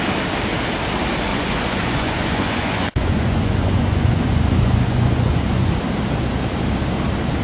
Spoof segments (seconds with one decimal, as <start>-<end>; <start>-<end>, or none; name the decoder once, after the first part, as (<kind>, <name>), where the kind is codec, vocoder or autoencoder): 1.3-5.7 (vocoder, Vocos)